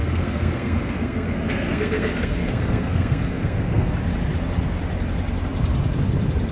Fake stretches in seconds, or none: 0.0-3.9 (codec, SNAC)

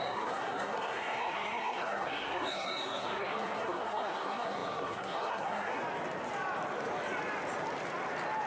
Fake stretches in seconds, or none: 0.0-5.8 (codec, SNAC)

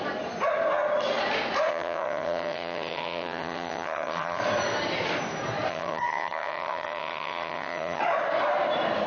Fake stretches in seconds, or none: 1.7-4.4 (vocoder, HiFi-GAN); 5.7-8.0